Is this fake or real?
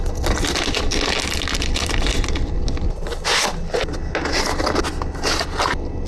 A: real